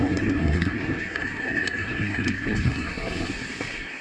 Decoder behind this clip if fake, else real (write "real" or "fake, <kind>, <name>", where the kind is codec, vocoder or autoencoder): fake, codec, SNAC